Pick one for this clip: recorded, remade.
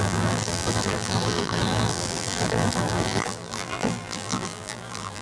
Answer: remade